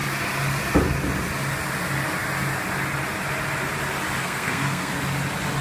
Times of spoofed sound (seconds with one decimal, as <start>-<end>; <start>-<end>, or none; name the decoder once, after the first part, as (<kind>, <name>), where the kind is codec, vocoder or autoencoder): 4.2-4.9 (codec, SNAC)